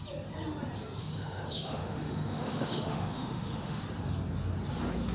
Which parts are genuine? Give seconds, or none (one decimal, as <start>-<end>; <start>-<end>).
0.0-1.0; 3.8-5.1